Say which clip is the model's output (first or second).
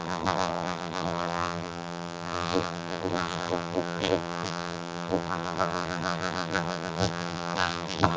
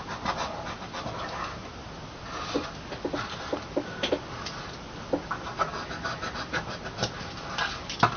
first